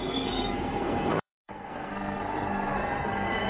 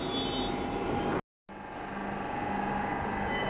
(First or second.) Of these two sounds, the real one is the second